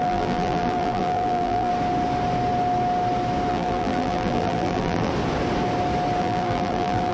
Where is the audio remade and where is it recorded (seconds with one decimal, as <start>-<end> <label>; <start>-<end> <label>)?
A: 0.0-1.7 remade; 1.7-3.5 recorded; 3.5-5.1 remade; 5.1-6.2 recorded; 6.2-7.1 remade